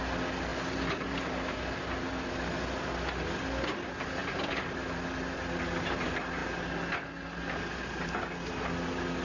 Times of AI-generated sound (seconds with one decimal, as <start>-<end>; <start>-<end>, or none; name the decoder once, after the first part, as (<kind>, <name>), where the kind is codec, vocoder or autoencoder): 4.2-5.5 (vocoder, BigVGAN v2)